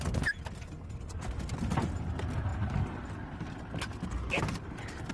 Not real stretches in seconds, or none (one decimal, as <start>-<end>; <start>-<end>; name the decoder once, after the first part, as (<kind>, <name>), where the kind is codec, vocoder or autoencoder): none